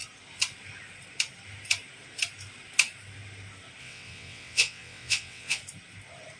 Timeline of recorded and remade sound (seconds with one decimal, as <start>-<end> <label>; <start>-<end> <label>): 0.0-3.8 recorded; 3.8-5.6 remade; 5.6-6.4 recorded